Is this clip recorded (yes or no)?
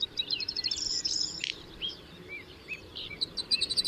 no